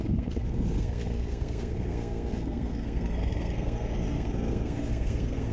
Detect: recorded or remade remade